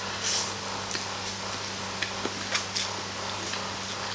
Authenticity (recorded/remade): recorded